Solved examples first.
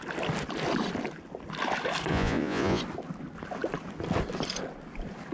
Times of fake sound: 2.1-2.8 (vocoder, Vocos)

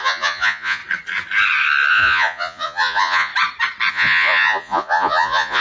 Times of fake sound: 0.0-0.8 (vocoder, Vocos); 1.9-3.3; 3.9-5.6